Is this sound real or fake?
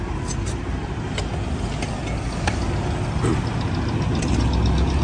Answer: real